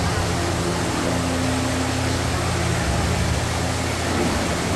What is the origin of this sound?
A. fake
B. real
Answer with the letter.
B